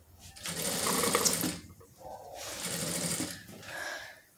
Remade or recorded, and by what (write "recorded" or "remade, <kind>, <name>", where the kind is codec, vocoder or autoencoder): recorded